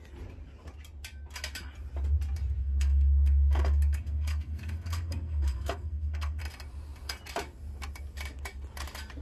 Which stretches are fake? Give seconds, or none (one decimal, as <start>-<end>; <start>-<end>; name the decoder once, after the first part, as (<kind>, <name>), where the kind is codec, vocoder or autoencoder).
2.6-6.4 (codec, SNAC)

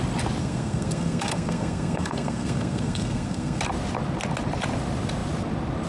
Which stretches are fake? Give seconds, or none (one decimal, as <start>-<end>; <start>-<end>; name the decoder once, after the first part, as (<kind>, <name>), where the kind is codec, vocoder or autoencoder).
0.4-3.6 (codec, SNAC)

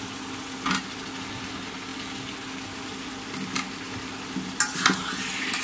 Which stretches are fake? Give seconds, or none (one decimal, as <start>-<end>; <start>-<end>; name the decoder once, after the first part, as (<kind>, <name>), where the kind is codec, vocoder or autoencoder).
none